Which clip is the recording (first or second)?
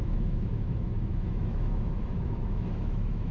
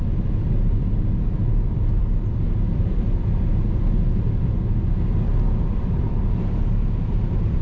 second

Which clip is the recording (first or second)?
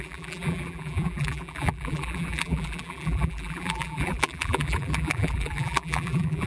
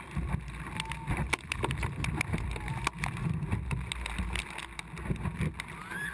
second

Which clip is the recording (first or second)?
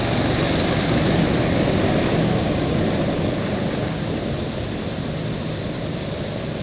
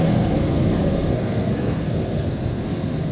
first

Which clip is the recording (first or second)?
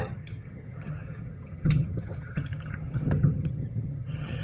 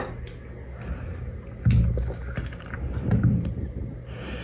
second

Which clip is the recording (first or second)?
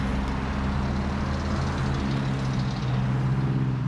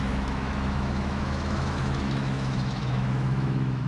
first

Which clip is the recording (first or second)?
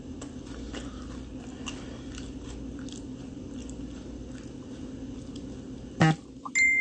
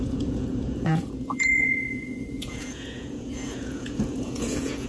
first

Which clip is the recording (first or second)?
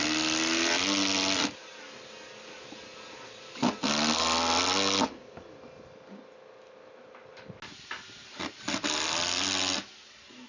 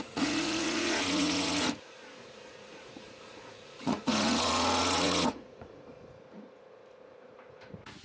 first